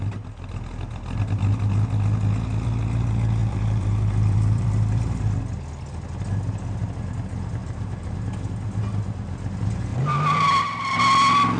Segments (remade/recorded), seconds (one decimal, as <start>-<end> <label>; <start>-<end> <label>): 0.0-3.4 recorded; 3.4-5.4 remade; 5.4-7.6 recorded; 7.6-8.1 remade; 8.1-9.9 recorded; 9.9-11.0 remade; 11.0-11.6 recorded

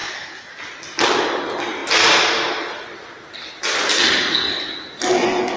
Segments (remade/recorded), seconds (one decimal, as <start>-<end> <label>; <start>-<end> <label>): 0.0-5.6 recorded

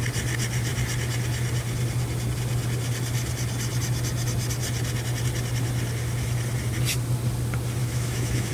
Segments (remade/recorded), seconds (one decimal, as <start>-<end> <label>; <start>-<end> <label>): 0.0-7.8 recorded; 7.8-8.5 remade

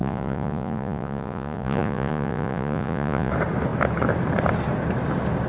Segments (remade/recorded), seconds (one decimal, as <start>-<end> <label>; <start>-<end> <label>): 0.0-3.3 remade; 3.3-5.5 recorded

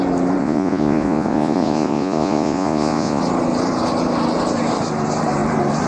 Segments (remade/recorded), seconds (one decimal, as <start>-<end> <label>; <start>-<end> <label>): 0.0-0.4 recorded; 0.4-3.2 remade; 3.2-5.9 recorded

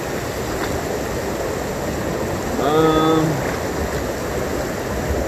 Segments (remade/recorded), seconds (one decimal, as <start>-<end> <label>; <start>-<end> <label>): 0.0-5.3 recorded